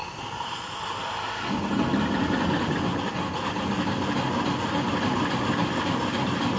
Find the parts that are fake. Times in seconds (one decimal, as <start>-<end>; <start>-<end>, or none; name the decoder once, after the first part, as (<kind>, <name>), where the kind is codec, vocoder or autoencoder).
none

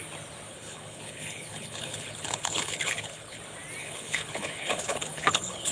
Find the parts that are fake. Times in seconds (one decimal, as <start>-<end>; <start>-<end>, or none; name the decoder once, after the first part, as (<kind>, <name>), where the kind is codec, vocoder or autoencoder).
0.5-3.4 (codec, HILCodec); 3.8-5.7

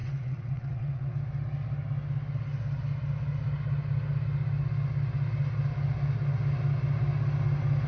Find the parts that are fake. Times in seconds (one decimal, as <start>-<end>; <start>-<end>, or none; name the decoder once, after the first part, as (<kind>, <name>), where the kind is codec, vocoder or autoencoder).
0.0-1.1 (vocoder, WaveNeXt)

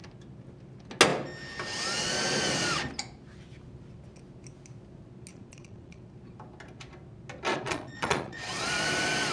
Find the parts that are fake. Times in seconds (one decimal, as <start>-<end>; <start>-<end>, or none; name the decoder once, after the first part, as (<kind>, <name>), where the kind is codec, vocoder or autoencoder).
5.3-6.0 (vocoder, Vocos); 7.5-8.7

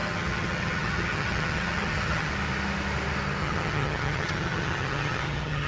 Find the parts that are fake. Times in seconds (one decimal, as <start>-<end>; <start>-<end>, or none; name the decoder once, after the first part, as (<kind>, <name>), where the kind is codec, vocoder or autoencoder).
0.0-2.3 (vocoder, HiFi-GAN); 3.4-5.7

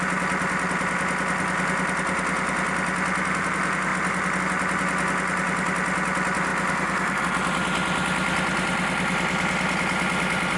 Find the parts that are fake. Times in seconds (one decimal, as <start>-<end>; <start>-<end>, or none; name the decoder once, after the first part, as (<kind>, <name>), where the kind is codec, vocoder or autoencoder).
6.5-7.2 (vocoder, BigVGAN v2)

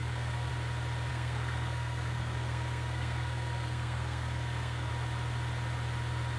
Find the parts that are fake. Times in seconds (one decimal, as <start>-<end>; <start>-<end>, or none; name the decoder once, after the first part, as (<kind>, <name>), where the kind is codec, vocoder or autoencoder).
0.0-0.5 (codec, SNAC); 1.1-4.9